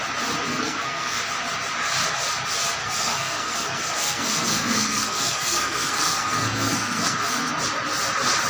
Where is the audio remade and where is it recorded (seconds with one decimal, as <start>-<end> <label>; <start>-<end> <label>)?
0.0-0.5 recorded; 0.5-1.2 remade; 1.2-2.8 recorded; 2.8-7.5 remade; 7.5-8.5 recorded